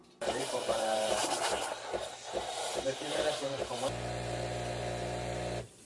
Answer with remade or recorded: remade